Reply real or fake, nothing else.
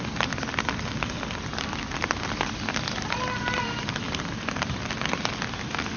real